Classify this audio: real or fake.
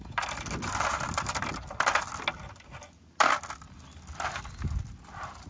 real